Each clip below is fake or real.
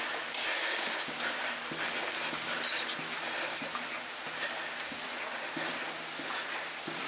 real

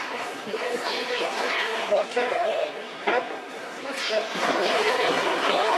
fake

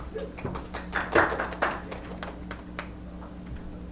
real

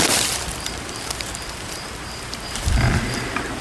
fake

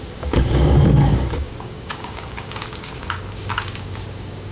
fake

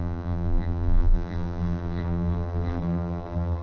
fake